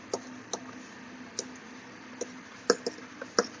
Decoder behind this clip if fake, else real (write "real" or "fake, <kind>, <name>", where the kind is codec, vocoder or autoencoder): real